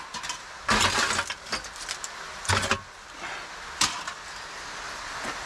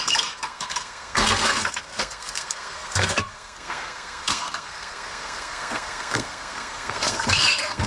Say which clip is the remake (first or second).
second